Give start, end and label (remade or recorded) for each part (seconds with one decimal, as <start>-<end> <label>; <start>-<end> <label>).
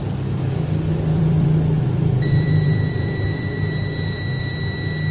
0.0-1.1 recorded; 1.1-4.2 remade; 4.2-5.1 recorded